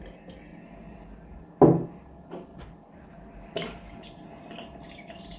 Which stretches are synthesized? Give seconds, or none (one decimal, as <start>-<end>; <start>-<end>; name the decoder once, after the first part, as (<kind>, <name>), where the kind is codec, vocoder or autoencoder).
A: 0.5-1.2 (vocoder, BigVGAN v2); 2.5-5.4